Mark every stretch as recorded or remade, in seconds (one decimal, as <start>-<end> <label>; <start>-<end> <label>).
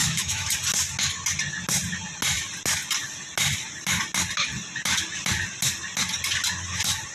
0.0-0.5 remade; 0.5-7.1 recorded